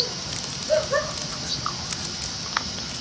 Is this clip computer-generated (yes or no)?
no